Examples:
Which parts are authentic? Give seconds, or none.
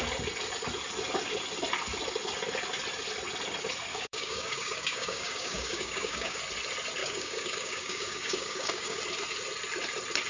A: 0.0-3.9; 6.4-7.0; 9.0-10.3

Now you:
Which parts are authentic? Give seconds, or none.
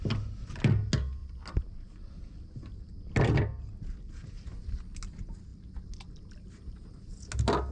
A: 0.0-7.7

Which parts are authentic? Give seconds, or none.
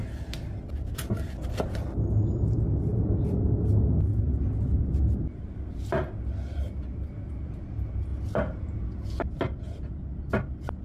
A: 0.0-10.8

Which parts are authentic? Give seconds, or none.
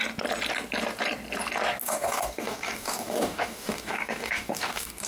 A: 0.0-1.8